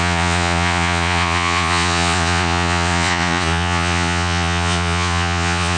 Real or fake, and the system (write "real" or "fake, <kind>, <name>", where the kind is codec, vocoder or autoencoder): fake, vocoder, Vocos